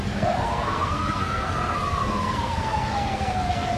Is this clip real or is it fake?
fake